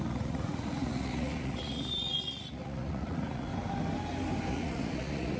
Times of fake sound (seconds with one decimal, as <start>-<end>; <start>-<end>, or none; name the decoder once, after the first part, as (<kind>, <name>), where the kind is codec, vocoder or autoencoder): 0.0-3.5 (vocoder, Vocos); 4.5-5.4